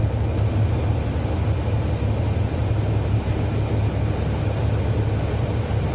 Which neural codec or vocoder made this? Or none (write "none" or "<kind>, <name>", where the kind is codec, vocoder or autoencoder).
none